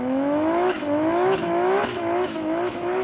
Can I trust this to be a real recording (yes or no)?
no